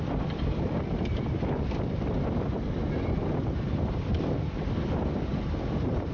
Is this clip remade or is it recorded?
remade